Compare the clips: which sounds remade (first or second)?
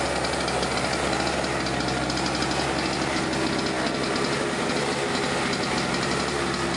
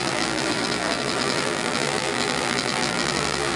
second